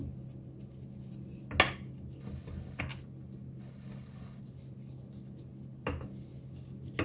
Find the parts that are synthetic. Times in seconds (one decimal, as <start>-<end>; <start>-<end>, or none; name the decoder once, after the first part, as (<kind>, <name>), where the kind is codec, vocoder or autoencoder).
2.2-2.8 (codec, HILCodec); 3.6-4.4